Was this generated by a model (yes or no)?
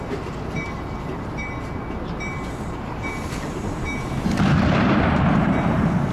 yes